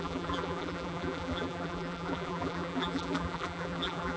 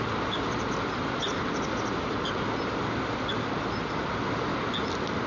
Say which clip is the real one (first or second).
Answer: second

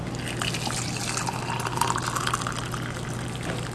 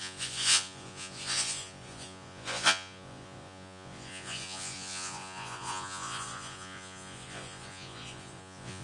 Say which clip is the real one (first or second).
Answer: first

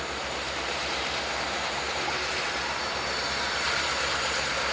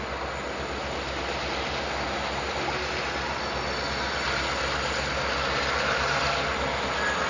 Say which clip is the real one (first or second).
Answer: second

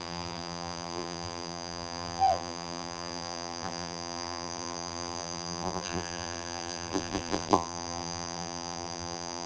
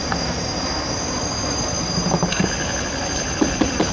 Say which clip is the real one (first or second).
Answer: second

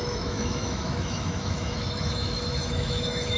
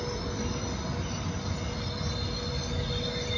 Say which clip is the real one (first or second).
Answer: second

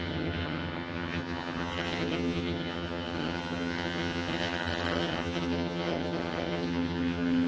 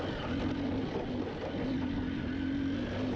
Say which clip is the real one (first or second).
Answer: second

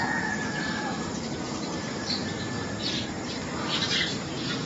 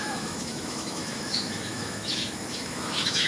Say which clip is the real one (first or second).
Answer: first